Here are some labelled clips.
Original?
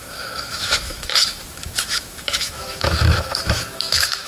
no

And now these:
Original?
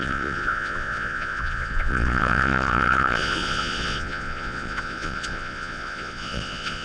no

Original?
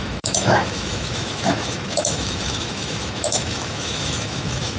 no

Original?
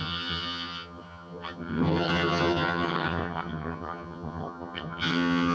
no